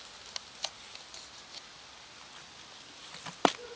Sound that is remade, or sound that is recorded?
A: recorded